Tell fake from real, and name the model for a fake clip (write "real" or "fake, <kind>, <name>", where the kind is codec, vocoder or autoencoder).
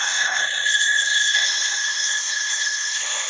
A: fake, codec, SNAC